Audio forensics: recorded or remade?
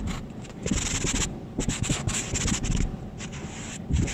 remade